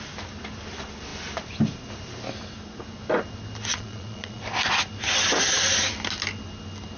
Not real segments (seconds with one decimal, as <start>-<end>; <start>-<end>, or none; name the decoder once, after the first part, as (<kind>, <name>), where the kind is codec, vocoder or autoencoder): 3.7-4.4 (vocoder, Vocos)